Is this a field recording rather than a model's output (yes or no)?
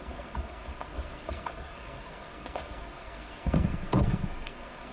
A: no